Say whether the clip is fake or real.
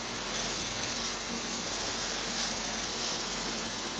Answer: fake